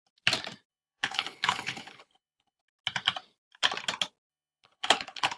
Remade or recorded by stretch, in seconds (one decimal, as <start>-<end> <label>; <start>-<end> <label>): 0.0-0.7 recorded; 0.7-2.6 remade; 2.6-4.3 recorded; 4.3-5.4 remade